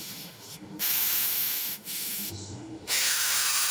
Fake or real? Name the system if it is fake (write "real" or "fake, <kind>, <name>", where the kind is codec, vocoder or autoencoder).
fake, autoencoder, DAC-VAE